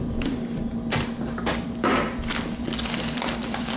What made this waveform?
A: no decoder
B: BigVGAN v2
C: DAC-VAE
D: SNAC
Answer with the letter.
B